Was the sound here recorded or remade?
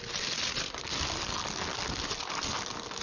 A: recorded